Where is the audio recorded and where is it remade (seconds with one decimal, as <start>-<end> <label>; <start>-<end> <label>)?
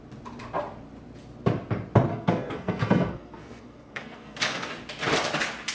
0.0-2.1 recorded; 2.1-4.7 remade; 4.7-5.7 recorded